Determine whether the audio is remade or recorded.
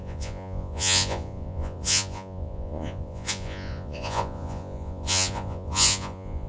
remade